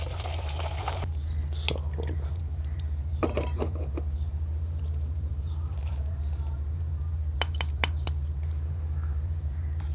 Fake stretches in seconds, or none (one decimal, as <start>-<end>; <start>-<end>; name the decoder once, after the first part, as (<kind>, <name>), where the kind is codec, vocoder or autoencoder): 0.0-1.4 (vocoder, BigVGAN v2); 2.1-9.9